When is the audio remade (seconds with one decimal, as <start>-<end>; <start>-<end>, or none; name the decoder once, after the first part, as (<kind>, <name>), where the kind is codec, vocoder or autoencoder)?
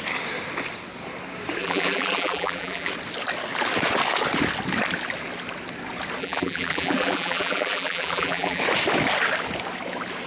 1.6-2.9 (vocoder, BigVGAN v2); 6.2-8.6